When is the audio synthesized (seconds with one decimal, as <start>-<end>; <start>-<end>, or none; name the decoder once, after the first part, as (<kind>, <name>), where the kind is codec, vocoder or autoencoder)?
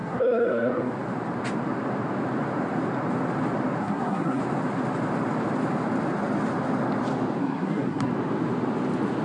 0.0-0.9 (codec, SNAC); 3.8-4.4; 7.4-8.1